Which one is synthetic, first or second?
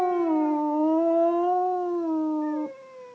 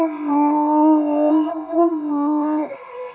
second